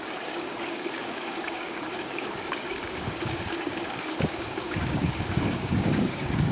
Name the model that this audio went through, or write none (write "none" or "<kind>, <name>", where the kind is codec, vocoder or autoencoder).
codec, DAC